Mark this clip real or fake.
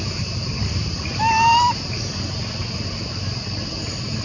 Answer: real